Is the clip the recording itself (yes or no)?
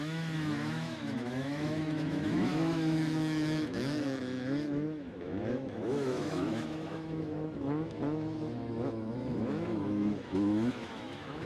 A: no